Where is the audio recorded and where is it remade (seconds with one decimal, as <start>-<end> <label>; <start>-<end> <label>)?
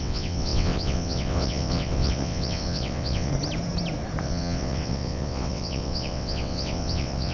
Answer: 0.0-3.3 remade; 3.3-4.2 recorded; 4.2-7.3 remade